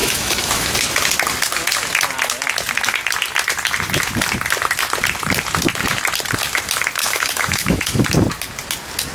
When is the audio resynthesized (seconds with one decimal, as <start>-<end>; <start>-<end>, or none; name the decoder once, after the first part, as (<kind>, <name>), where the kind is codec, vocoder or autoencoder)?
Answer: 0.0-0.7 (autoencoder, DAC-VAE); 7.0-8.0